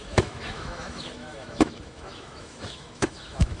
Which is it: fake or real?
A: fake